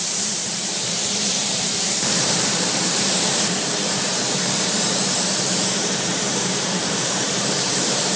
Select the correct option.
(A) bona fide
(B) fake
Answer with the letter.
B